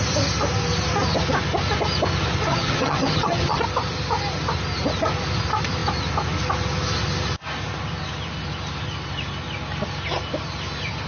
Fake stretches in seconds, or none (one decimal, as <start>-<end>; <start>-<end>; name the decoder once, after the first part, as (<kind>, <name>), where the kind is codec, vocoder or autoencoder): 2.5-3.6 (vocoder, HiFi-GAN)